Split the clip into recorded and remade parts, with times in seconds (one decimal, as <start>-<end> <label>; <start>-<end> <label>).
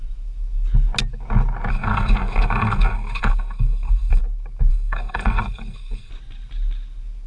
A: 0.0-1.7 recorded; 1.7-4.2 remade; 4.2-4.7 recorded; 4.7-6.1 remade; 6.1-7.3 recorded